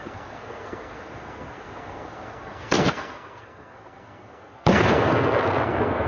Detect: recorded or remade remade